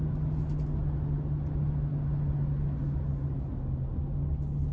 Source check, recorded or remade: recorded